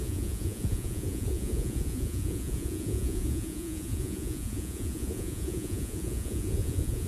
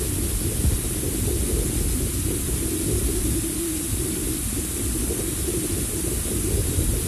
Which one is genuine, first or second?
second